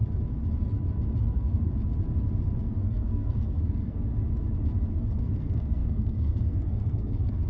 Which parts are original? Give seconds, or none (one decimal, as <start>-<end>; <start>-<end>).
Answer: 0.0-1.2; 1.7-2.6; 4.1-5.0

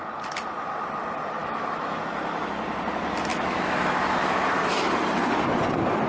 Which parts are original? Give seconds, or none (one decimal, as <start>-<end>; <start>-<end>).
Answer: 0.0-1.4; 2.0-3.3; 4.9-6.1

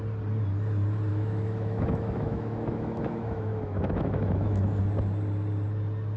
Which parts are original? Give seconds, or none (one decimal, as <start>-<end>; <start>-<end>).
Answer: 0.0-1.1; 4.8-6.2

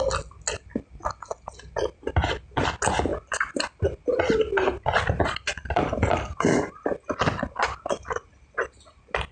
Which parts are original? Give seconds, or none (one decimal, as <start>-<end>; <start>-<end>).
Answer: 0.0-9.3

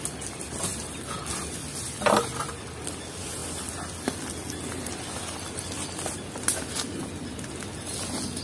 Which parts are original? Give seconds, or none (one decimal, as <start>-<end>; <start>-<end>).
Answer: 0.0-8.4

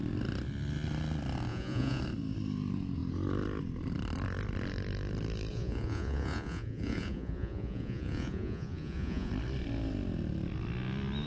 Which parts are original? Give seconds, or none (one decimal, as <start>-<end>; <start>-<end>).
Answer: 0.0-1.5; 2.0-5.5; 9.3-11.3

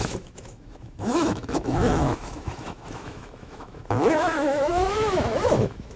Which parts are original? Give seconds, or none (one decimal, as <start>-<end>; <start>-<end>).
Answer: none

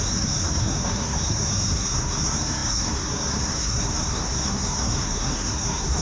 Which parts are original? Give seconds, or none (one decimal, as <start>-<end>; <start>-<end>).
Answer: none